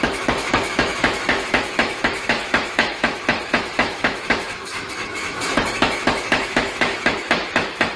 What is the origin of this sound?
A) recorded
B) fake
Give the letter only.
B